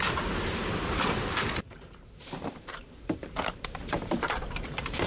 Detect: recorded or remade remade